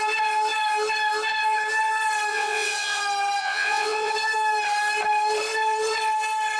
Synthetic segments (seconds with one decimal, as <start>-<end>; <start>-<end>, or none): 2.3-3.0; 3.4-4.1